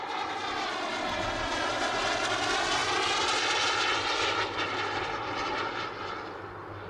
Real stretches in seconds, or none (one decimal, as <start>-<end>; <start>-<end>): 0.0-6.9